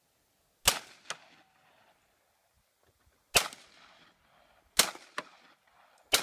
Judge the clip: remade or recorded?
recorded